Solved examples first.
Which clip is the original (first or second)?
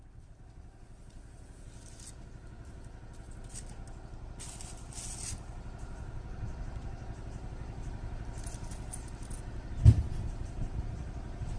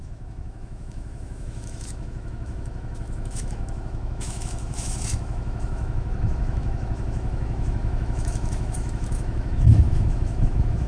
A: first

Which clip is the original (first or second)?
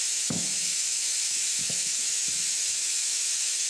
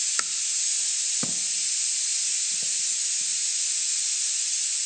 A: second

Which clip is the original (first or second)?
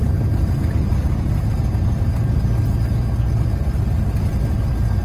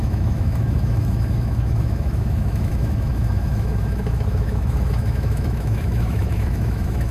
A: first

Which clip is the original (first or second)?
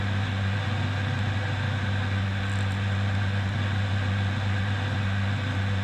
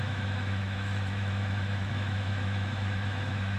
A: first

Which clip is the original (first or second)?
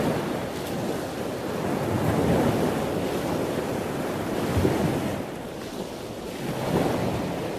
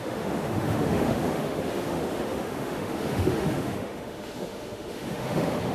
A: first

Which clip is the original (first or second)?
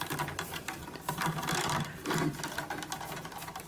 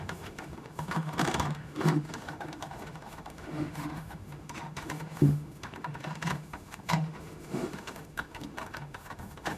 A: first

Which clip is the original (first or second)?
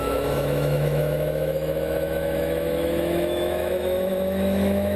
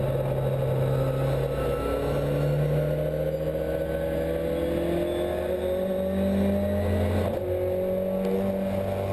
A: second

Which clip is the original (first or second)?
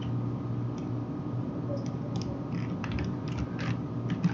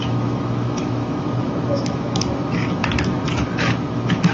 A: first